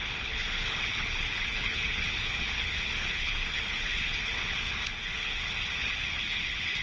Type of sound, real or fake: fake